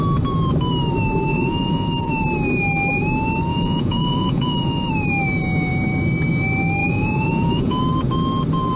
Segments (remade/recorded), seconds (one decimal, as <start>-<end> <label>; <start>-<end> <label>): 0.0-1.3 recorded; 1.3-2.1 remade; 2.1-3.5 recorded; 3.5-4.9 remade; 4.9-6.8 recorded; 6.8-7.8 remade; 7.8-8.8 recorded